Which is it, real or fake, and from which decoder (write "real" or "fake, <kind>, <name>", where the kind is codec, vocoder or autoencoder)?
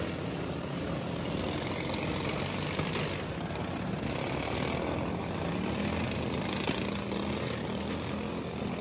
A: real